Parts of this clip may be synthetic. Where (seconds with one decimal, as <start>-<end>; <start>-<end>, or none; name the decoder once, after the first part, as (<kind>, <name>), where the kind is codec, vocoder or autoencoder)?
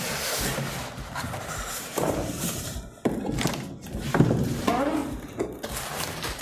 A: 0.0-3.0 (vocoder, BigVGAN v2); 4.4-5.0; 5.9-6.4